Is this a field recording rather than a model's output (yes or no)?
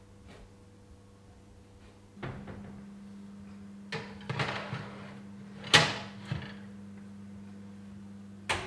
yes